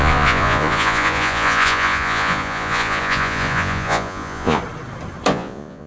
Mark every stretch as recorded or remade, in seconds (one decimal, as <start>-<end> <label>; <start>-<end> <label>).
0.0-4.6 remade; 4.6-5.3 recorded; 5.3-5.9 remade